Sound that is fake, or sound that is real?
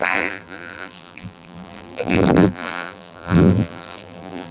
fake